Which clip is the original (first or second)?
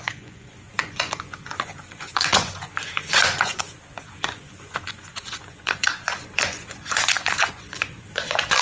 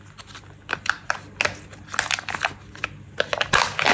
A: second